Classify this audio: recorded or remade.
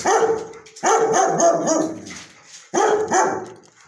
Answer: recorded